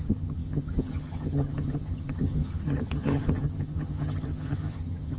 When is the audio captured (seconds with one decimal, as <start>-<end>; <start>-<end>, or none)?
none